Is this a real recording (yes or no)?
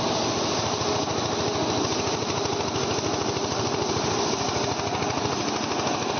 yes